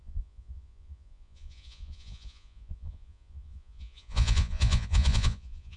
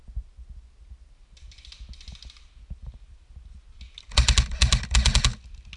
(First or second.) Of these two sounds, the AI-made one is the first